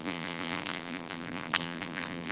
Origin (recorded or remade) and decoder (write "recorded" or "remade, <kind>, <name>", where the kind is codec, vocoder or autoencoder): remade, vocoder, BigVGAN v2